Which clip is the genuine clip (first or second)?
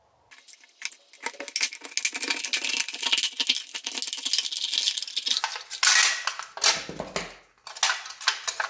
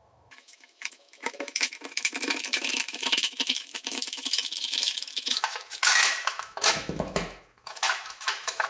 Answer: first